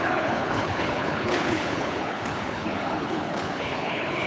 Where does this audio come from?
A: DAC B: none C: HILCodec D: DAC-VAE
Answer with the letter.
C